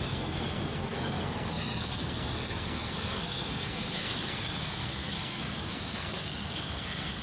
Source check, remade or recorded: remade